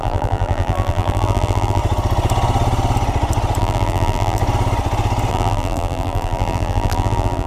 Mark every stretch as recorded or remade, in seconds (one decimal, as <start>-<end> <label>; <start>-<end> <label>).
0.0-1.8 remade; 1.8-3.6 recorded; 3.6-4.4 remade; 4.4-5.3 recorded; 5.3-7.5 remade